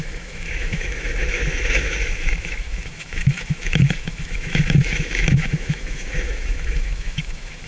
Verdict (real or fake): fake